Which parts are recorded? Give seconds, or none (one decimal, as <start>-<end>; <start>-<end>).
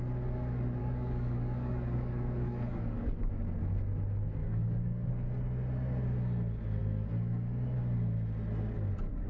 0.0-0.8; 3.3-4.4; 5.1-6.8; 7.8-9.3